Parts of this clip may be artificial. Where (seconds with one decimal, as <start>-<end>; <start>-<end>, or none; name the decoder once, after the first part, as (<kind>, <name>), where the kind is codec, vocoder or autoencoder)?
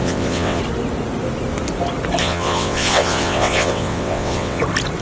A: 0.0-0.6 (vocoder, WaveNeXt); 2.2-4.6